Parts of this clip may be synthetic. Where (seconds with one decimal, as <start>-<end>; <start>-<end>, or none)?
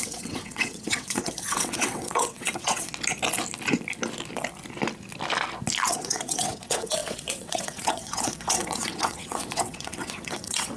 0.0-2.9; 5.9-10.8